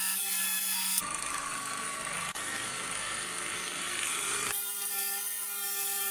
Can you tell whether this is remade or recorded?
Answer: remade